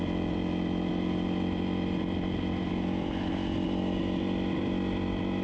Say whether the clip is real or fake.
real